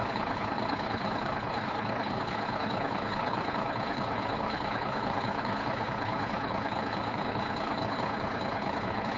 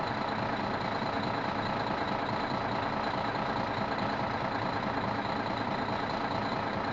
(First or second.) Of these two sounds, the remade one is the first